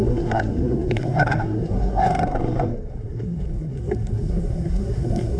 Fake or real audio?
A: fake